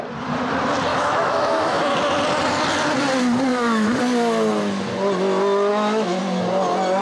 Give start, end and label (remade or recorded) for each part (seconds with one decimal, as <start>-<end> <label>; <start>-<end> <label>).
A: 0.0-0.9 recorded; 0.9-1.8 remade; 1.8-3.5 recorded; 3.5-4.0 remade; 4.0-5.7 recorded; 5.7-6.2 remade; 6.2-7.0 recorded

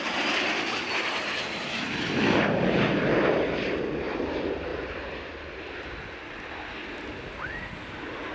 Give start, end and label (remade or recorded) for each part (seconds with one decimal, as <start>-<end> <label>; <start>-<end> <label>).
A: 0.0-8.3 recorded

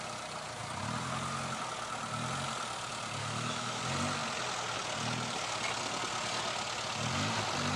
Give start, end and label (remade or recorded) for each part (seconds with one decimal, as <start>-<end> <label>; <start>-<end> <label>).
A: 0.0-3.2 recorded; 3.2-3.8 remade; 3.8-7.8 recorded

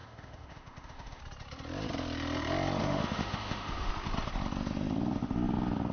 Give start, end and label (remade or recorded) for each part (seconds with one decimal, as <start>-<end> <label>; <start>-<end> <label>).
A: 0.0-1.2 remade; 1.2-2.8 recorded; 2.8-3.9 remade; 3.9-5.9 recorded